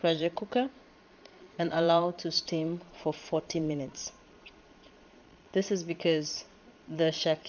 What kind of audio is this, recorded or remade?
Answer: remade